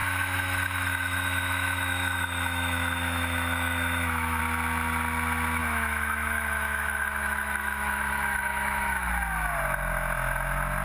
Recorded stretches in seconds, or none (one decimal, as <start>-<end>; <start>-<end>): 4.4-5.6; 9.1-10.8